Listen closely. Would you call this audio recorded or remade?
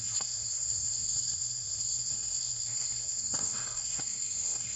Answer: remade